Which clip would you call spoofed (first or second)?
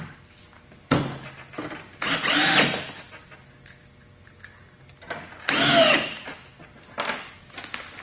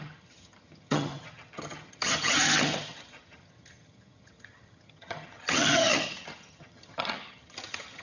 second